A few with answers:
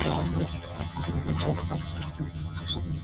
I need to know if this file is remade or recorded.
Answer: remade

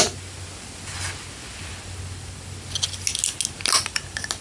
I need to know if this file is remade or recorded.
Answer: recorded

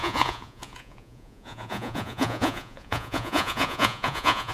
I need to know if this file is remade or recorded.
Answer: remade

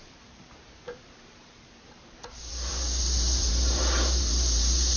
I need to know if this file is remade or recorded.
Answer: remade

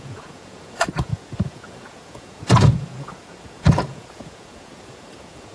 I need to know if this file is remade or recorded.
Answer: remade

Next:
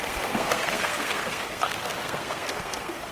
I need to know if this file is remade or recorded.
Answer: remade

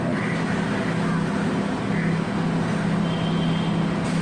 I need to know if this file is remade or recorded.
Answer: recorded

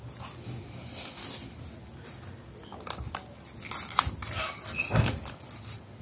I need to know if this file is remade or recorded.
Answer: recorded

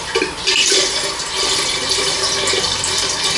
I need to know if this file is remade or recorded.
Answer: remade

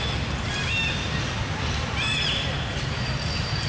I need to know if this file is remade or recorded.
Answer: recorded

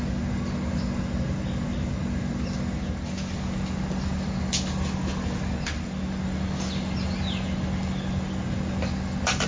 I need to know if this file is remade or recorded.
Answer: recorded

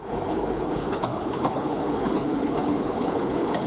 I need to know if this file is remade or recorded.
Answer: remade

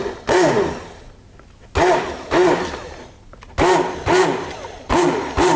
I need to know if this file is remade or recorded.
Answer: recorded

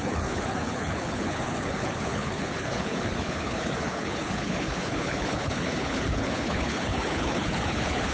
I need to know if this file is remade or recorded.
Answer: remade